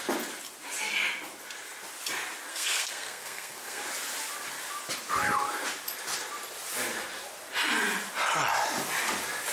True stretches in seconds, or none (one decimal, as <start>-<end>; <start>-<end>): 0.0-2.5; 3.8-9.5